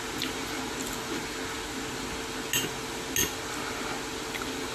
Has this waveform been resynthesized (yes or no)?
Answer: no